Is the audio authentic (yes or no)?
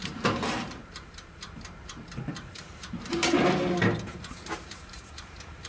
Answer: no